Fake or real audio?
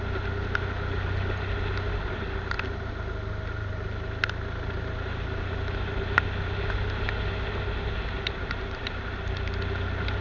real